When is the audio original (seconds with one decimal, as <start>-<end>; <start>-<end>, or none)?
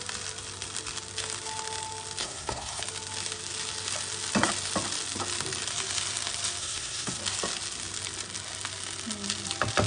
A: 0.0-2.2; 2.8-6.6; 7.2-9.9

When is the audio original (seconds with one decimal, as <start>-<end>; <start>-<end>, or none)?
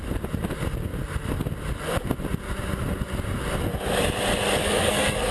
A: 0.0-4.6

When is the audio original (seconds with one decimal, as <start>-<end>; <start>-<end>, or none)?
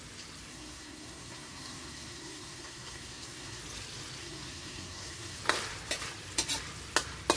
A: 0.0-0.5; 3.6-4.2; 5.4-7.4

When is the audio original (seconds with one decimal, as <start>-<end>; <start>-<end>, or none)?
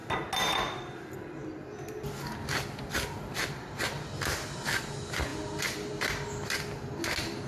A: 0.0-7.5